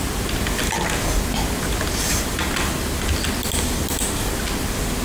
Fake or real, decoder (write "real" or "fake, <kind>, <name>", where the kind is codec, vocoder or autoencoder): real